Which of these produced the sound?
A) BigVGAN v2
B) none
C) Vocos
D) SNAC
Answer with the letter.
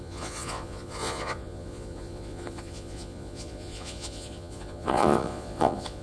C